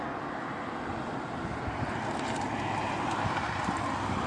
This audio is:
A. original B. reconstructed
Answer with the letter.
A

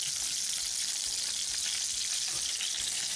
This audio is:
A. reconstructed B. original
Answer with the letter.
B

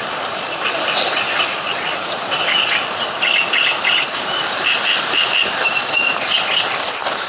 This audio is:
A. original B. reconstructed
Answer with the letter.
B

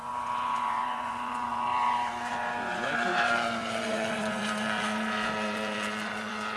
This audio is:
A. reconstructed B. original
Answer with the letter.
A